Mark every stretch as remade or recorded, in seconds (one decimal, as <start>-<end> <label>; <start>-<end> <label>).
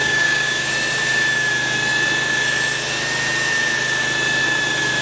0.0-0.7 remade; 0.7-5.0 recorded